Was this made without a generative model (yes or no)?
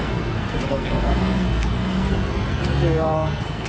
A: no